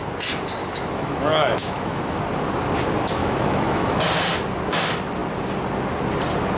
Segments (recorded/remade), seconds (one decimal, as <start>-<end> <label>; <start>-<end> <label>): 0.0-0.6 recorded; 0.6-2.2 remade; 2.2-3.2 recorded; 3.2-4.0 remade; 4.0-6.6 recorded

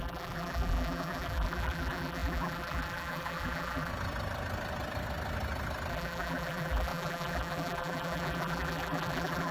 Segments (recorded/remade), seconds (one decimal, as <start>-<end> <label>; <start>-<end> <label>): 0.0-3.9 remade; 3.9-5.9 recorded; 5.9-9.5 remade

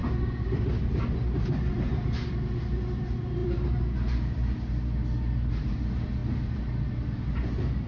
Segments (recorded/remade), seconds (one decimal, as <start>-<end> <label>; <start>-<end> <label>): 0.0-7.9 recorded

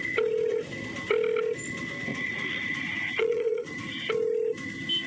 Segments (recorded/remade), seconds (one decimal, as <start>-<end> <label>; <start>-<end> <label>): 0.0-2.1 recorded; 2.1-3.9 remade; 3.9-5.1 recorded

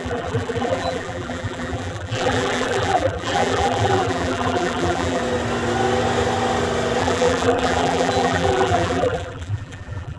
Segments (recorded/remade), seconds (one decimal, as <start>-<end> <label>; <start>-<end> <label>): 0.0-5.2 remade; 5.2-7.0 recorded; 7.0-10.2 remade

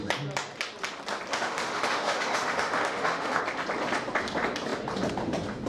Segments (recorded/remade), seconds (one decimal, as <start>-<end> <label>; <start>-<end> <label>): 0.0-1.3 recorded; 1.3-3.4 remade; 3.4-5.7 recorded

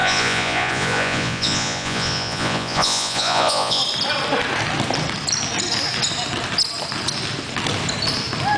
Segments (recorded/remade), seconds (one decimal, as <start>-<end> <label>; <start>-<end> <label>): 0.0-3.8 remade; 3.8-8.6 recorded

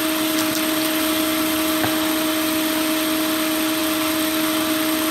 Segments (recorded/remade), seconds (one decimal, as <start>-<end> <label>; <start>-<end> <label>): 0.0-5.1 remade